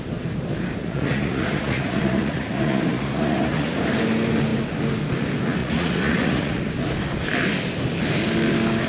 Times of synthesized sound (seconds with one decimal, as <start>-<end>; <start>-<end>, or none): 0.8-3.8; 5.6-6.7